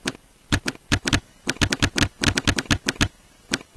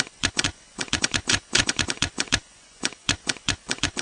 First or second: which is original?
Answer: first